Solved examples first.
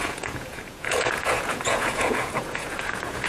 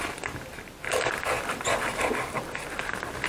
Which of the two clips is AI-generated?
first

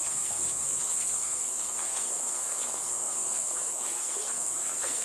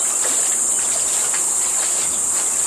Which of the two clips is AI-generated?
first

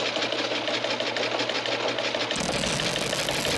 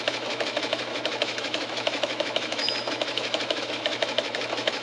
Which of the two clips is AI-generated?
second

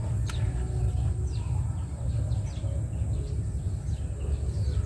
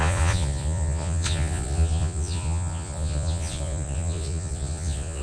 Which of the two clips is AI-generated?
second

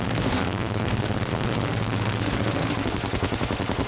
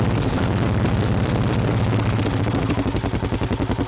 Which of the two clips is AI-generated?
first